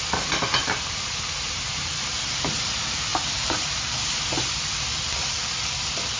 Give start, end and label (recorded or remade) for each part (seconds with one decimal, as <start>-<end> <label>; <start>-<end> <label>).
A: 0.0-0.6 recorded; 0.6-2.6 remade; 2.6-3.1 recorded; 3.1-4.2 remade; 4.2-6.2 recorded